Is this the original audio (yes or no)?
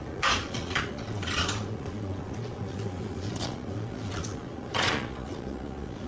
no